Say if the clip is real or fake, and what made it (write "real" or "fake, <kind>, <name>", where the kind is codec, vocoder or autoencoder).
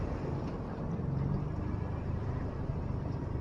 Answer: real